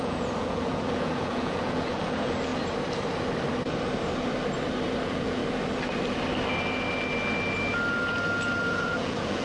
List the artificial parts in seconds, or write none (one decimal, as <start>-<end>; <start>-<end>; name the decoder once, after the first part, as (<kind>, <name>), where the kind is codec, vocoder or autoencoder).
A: 0.0-2.5 (vocoder, Vocos); 5.0-5.4; 8.7-9.4